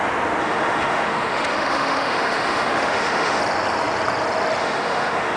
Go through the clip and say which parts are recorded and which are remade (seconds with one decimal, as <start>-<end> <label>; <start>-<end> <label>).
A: 0.0-0.4 recorded; 0.4-3.4 remade; 3.4-4.6 recorded; 4.6-5.4 remade